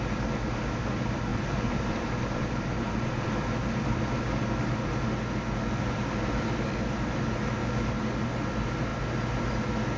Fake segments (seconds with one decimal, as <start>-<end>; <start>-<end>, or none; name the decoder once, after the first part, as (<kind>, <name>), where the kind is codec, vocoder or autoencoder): 1.3-3.3 (vocoder, BigVGAN v2)